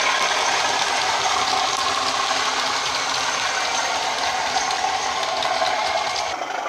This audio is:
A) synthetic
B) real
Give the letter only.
B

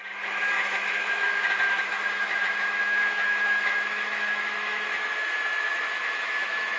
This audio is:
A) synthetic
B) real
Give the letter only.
A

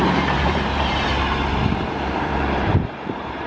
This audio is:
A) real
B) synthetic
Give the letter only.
B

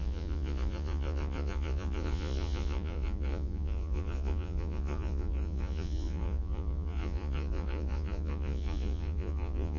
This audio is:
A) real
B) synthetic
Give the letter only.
B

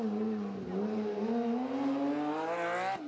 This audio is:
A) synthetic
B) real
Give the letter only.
B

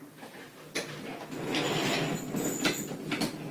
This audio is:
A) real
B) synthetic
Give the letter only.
A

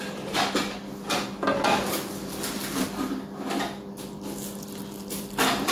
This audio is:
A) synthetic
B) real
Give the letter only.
B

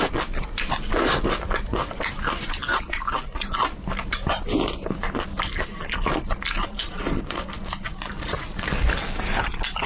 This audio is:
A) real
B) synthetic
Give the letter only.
A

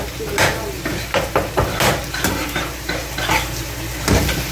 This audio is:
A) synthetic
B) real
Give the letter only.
B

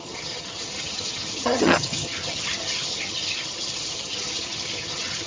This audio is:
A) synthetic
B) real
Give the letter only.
A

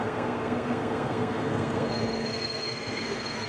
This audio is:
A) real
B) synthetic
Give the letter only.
B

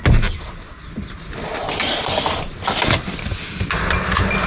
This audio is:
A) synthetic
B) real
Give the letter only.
B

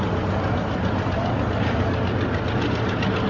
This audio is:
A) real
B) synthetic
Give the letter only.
A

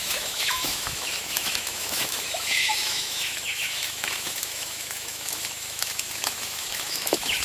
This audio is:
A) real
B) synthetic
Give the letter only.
B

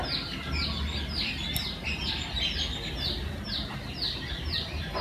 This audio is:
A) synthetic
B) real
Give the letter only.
B